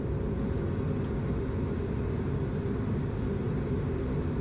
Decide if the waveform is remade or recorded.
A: recorded